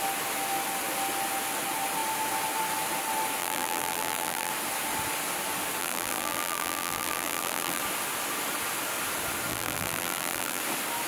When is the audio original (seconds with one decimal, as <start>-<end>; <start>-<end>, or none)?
0.0-3.4; 4.5-5.8; 7.8-9.5; 10.6-11.1